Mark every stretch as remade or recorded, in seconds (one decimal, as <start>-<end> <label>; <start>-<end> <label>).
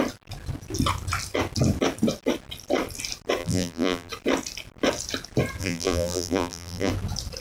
0.0-3.4 recorded; 3.4-4.1 remade; 4.1-5.6 recorded; 5.6-6.9 remade; 6.9-7.4 recorded